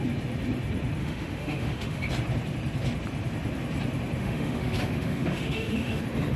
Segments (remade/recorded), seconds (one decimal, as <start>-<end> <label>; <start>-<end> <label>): 0.0-1.0 recorded; 1.0-2.1 remade; 2.1-4.2 recorded; 4.2-6.0 remade; 6.0-6.4 recorded